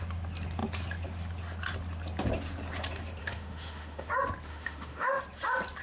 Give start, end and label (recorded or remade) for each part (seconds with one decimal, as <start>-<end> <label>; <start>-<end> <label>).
0.0-3.2 recorded; 3.2-4.1 remade; 4.1-4.5 recorded; 4.5-5.2 remade; 5.2-5.8 recorded